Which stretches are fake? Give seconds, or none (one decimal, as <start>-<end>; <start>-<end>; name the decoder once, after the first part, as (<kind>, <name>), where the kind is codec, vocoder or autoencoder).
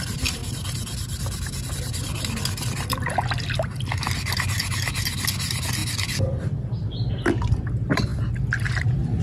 0.0-9.2 (vocoder, BigVGAN v2)